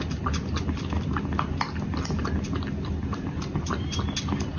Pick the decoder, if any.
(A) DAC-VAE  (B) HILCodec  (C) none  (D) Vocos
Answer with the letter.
C